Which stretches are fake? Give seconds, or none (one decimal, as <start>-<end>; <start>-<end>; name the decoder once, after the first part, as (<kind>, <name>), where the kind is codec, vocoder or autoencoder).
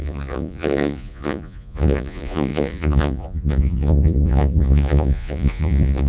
0.0-6.1 (vocoder, Vocos)